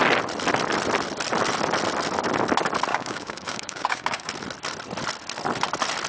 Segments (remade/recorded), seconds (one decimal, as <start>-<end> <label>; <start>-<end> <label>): 0.0-2.9 recorded; 2.9-4.3 remade; 4.3-6.1 recorded